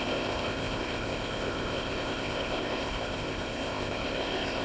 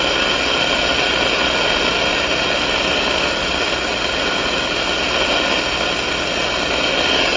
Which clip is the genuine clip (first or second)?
second